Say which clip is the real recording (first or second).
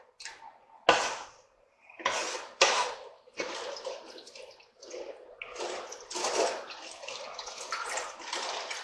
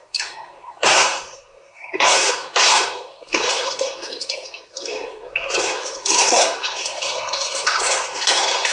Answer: first